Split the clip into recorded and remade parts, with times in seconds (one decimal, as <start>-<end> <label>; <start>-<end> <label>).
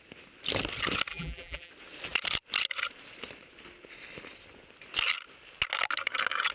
0.0-1.1 recorded; 1.1-1.7 remade; 1.7-6.5 recorded